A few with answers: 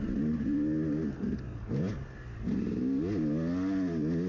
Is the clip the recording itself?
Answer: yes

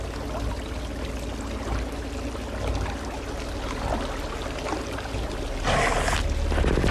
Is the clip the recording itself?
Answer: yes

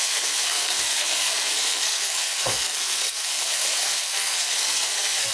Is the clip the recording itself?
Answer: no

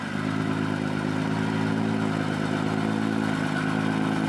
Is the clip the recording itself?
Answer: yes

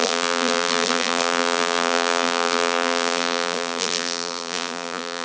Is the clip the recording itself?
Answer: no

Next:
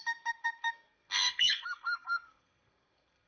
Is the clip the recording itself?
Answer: no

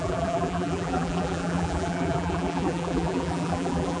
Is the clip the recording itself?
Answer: no